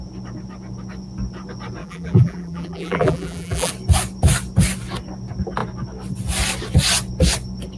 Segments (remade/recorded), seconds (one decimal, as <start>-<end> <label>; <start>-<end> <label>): 0.0-1.8 recorded; 1.8-3.7 remade; 3.7-7.8 recorded